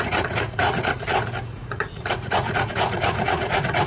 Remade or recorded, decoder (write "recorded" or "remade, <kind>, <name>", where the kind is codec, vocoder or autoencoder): remade, vocoder, Vocos